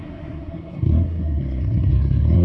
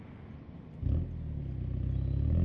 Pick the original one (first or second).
second